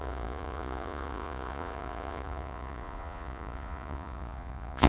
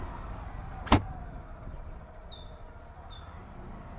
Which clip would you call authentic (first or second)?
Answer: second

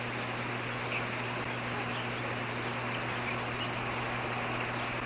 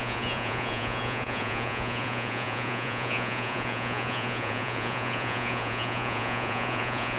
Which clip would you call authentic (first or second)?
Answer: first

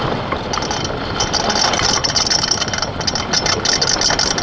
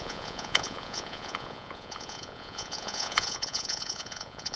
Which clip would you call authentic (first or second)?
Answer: first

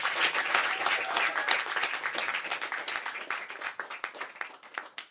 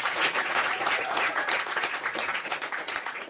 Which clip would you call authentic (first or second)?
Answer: first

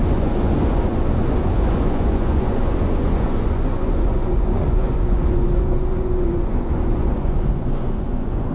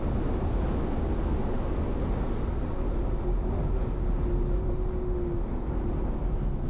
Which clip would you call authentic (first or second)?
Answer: second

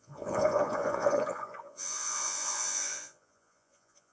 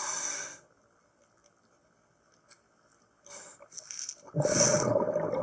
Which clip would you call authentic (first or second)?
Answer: second